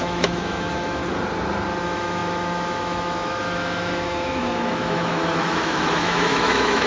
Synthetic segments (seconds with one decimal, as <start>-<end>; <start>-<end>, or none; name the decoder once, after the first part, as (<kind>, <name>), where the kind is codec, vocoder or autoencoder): 0.0-1.0 (autoencoder, DAC-VAE); 1.8-6.9